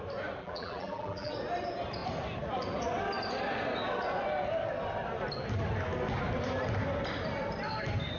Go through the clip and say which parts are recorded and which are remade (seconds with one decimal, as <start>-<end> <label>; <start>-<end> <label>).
0.0-0.4 recorded; 0.4-1.3 remade; 1.3-8.2 recorded